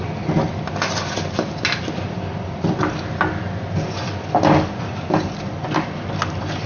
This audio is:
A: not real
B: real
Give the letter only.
B